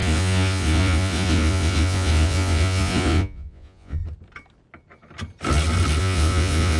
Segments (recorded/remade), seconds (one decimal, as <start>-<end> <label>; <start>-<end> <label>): 0.0-4.0 remade; 4.0-6.0 recorded; 6.0-6.8 remade